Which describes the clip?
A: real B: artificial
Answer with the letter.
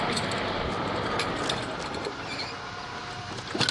A